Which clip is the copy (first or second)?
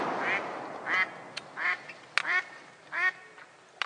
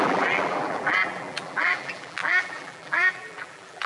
second